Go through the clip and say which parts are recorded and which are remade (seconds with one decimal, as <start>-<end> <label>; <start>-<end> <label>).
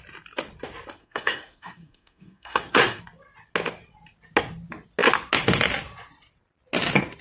0.0-1.0 recorded; 1.0-3.0 remade; 3.0-7.2 recorded